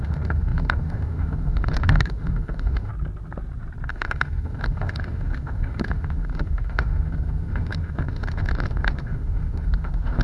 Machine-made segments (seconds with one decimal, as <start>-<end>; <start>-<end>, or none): 0.0-2.9; 3.9-10.2